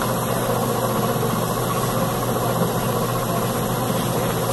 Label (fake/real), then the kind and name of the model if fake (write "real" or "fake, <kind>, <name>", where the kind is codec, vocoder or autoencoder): real